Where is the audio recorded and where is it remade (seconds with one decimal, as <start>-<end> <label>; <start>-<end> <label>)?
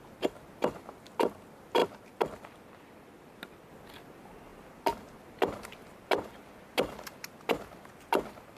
0.0-8.6 recorded